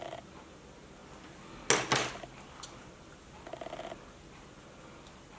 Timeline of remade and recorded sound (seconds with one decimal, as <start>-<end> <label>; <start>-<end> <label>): 0.0-5.4 recorded